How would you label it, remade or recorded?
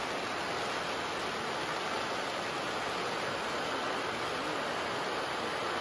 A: recorded